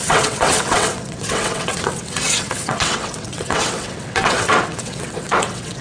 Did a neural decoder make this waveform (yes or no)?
yes